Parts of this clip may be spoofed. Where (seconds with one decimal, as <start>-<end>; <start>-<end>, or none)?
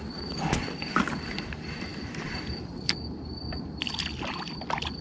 none